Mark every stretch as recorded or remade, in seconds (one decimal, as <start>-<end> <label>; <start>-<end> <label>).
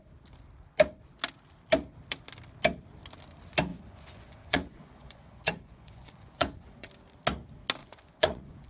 0.0-3.7 recorded; 3.7-6.9 remade; 6.9-7.8 recorded; 7.8-8.7 remade